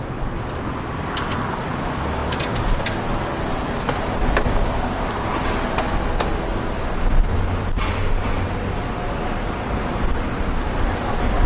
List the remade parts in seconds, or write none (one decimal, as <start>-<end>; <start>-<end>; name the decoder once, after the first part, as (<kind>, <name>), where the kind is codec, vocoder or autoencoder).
none